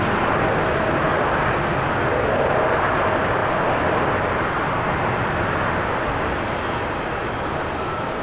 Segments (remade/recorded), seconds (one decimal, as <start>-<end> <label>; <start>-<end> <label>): 0.0-8.2 recorded